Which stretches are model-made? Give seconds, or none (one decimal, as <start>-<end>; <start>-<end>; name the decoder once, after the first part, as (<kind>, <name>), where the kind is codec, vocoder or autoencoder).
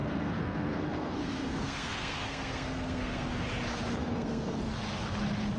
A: 0.0-3.4 (codec, SNAC); 4.0-4.6